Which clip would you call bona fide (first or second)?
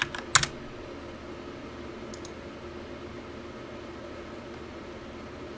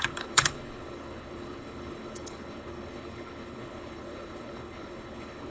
first